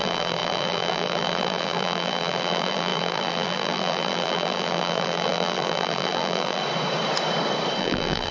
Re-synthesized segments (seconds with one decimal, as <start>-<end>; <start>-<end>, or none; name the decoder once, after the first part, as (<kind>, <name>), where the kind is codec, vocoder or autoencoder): 0.0-6.6 (vocoder, BigVGAN v2); 7.8-8.3